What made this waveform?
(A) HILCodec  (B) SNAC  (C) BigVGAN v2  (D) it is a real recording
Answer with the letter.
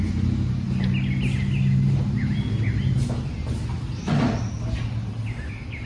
D